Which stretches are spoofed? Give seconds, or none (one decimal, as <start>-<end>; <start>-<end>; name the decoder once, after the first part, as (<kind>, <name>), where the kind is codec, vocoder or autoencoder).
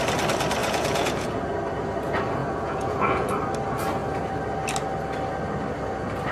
0.6-1.5 (vocoder, Vocos); 2.4-3.3